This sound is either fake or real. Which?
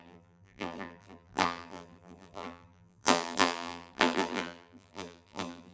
fake